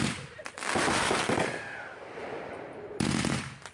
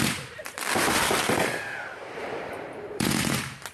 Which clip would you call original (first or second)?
first